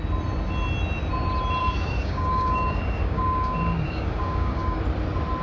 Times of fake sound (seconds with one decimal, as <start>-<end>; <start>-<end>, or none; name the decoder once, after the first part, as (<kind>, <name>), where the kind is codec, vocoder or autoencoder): 1.6-4.8 (codec, DAC)